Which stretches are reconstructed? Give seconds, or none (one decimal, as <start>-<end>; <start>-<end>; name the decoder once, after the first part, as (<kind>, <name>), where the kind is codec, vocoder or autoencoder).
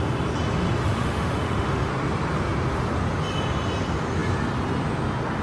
0.9-1.9 (autoencoder, DAC-VAE)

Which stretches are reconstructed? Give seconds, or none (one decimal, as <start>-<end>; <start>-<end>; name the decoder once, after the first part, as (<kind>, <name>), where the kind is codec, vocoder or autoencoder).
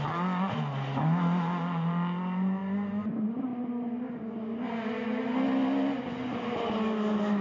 none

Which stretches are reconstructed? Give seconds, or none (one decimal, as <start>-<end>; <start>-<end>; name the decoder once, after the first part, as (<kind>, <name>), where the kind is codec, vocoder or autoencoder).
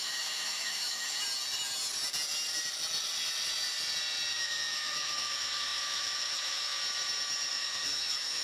0.0-1.2 (autoencoder, DAC-VAE); 4.3-6.8; 7.5-8.4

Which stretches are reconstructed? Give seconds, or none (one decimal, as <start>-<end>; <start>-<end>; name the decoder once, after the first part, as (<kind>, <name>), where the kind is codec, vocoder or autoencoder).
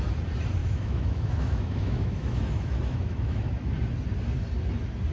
0.6-3.7 (autoencoder, DAC-VAE)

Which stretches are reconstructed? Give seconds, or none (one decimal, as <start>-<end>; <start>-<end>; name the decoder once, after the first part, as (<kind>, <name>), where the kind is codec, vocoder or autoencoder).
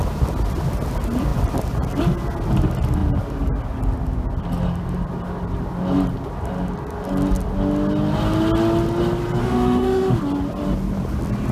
9.4-10.2 (autoencoder, DAC-VAE)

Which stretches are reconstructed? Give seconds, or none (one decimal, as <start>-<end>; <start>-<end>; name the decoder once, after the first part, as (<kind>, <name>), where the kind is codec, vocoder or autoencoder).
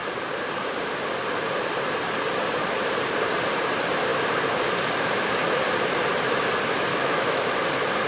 6.9-7.5 (autoencoder, DAC-VAE)